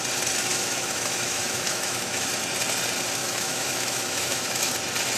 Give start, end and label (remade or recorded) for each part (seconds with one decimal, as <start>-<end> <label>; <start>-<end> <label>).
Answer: 0.0-0.5 recorded; 0.5-2.3 remade; 2.3-3.2 recorded; 3.2-4.7 remade; 4.7-5.2 recorded